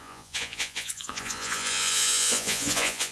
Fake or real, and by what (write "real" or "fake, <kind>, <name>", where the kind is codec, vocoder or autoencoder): fake, vocoder, Vocos